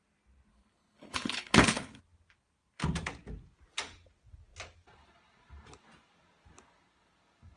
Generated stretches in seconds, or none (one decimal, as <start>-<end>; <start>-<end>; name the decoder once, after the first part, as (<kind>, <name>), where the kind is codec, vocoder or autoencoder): 0.5-2.0 (codec, HILCodec)